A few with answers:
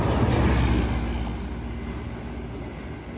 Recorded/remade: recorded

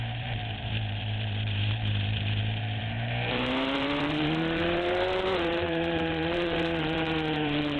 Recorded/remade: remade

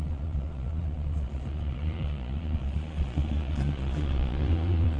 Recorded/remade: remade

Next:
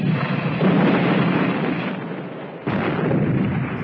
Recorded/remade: recorded